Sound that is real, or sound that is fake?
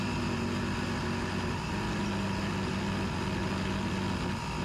real